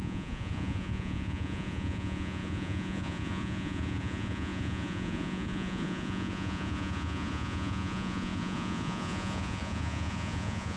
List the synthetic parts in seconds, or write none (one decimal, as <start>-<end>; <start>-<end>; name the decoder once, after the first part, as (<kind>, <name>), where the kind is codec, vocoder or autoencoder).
0.0-10.8 (vocoder, Vocos)